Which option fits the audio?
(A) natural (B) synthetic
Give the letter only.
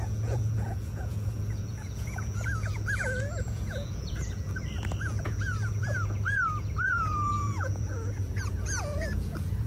B